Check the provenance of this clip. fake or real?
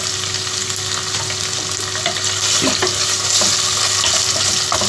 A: real